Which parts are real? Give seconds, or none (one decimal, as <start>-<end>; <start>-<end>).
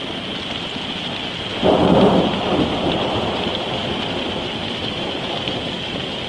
0.0-1.5; 2.9-3.5